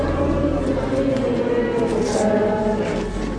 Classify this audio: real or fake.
real